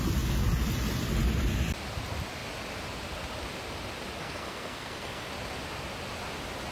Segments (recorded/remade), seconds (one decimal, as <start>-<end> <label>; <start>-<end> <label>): 0.0-4.2 recorded; 4.2-5.3 remade; 5.3-6.7 recorded

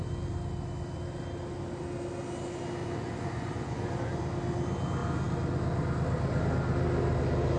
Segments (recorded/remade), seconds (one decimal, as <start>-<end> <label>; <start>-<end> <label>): 0.0-2.8 recorded; 2.8-4.1 remade; 4.1-7.6 recorded

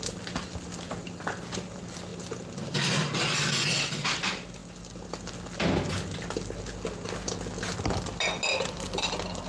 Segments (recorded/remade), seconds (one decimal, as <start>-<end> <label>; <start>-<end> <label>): 0.0-9.5 recorded

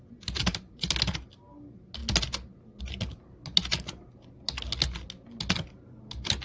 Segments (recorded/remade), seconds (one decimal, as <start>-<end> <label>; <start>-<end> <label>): 0.0-6.4 recorded

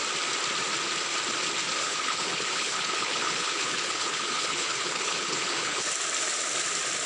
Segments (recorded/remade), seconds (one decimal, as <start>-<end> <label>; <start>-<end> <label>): 0.0-1.8 recorded; 1.8-5.9 remade; 5.9-7.1 recorded

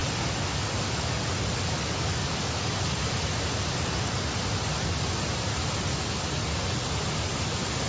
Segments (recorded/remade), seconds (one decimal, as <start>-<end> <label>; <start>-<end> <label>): 0.0-7.9 recorded

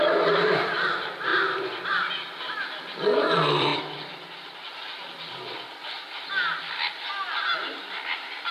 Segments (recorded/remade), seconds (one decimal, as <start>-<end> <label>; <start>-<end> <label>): 0.0-3.7 remade; 3.7-4.7 recorded; 4.7-5.7 remade; 5.7-6.3 recorded; 6.3-8.5 remade